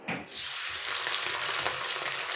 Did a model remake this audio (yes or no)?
no